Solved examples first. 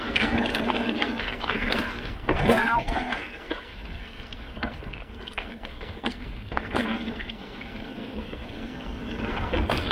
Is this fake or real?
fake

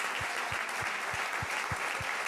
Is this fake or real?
real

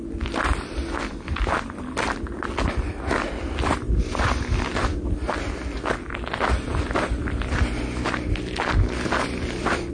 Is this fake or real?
real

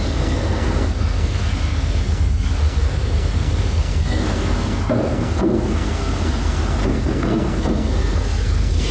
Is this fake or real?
fake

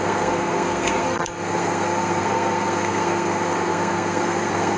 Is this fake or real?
fake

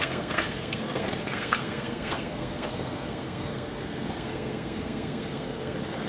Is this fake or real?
fake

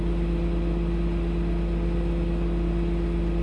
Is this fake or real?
real